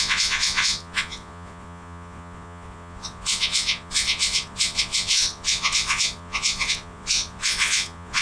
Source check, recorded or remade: remade